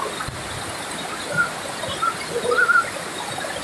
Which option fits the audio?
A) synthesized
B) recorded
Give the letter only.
B